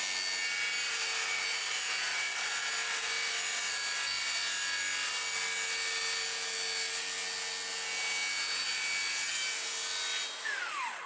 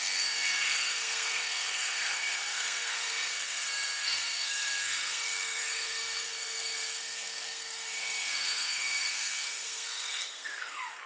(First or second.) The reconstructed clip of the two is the second